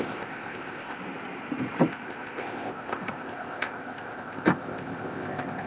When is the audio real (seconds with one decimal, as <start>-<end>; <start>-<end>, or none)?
1.0-1.9